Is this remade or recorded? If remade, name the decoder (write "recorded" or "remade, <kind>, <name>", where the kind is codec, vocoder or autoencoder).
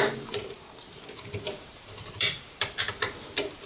remade, vocoder, BigVGAN v2